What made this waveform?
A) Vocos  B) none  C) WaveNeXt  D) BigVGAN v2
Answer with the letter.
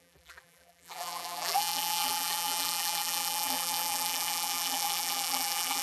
D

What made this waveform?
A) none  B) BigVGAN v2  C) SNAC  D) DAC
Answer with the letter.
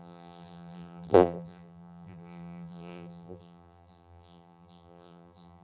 B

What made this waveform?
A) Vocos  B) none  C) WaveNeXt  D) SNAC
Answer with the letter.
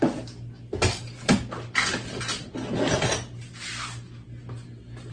B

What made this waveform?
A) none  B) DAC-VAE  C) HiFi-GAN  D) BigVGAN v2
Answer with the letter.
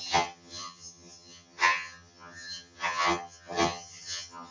C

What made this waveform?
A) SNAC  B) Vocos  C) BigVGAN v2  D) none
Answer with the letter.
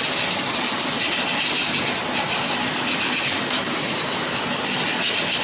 D